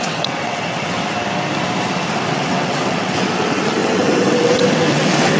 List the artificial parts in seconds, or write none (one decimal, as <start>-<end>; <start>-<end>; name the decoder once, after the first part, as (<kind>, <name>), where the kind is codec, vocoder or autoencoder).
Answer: 0.0-1.0 (vocoder, WaveNeXt); 2.3-5.4